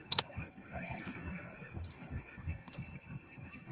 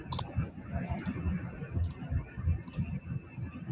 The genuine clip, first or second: second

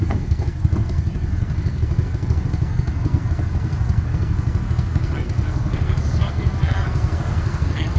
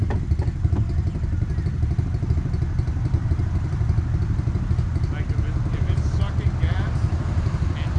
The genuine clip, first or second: second